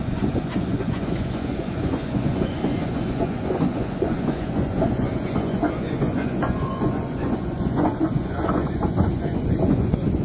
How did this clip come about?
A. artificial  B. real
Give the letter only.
A